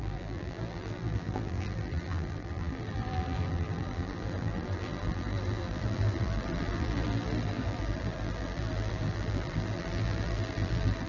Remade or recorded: remade